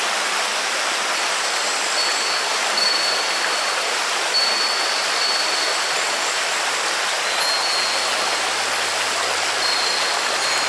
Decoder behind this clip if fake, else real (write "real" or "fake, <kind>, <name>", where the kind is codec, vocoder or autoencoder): real